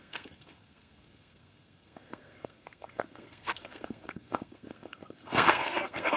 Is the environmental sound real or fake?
fake